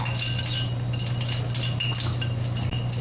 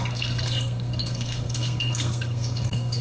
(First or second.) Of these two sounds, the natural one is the first